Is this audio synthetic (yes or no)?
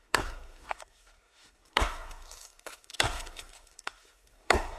yes